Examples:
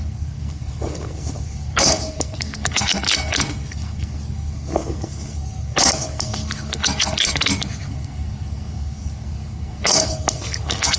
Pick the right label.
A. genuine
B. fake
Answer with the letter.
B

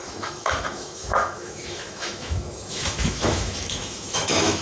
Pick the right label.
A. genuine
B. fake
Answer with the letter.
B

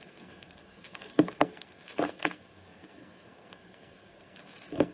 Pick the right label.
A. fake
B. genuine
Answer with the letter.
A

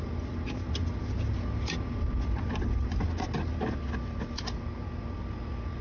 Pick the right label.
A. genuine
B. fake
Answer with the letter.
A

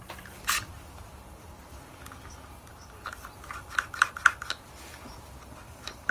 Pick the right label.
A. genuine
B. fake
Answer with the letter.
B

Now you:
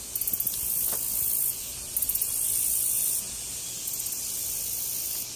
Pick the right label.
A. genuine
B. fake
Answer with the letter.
A